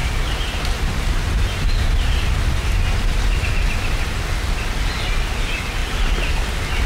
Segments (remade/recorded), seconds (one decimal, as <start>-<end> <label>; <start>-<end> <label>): 0.0-2.8 remade; 2.8-6.9 recorded